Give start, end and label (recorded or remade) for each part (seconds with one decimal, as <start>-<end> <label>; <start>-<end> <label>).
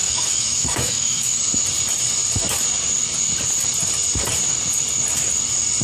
0.0-1.4 remade; 1.4-5.8 recorded